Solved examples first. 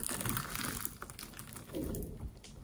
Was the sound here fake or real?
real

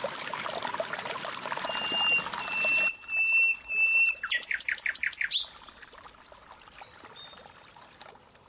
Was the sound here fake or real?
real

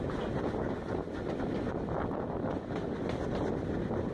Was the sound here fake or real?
real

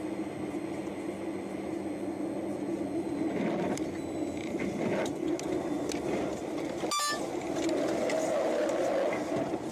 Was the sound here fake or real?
real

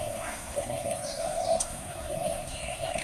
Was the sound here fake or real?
fake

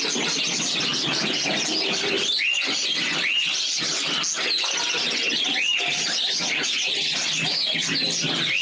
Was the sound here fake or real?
real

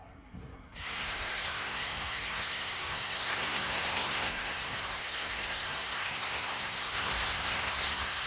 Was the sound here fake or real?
fake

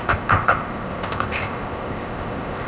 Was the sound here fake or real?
fake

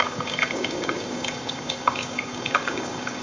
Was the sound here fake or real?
fake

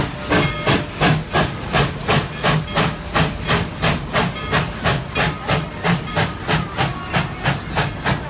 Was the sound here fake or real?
real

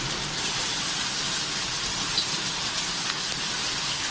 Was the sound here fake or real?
real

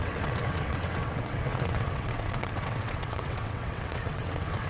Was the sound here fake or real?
fake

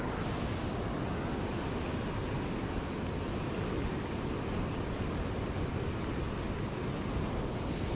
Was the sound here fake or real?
real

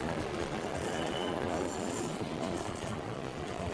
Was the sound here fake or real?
fake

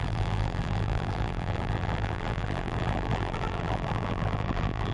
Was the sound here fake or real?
fake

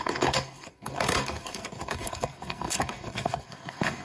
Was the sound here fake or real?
fake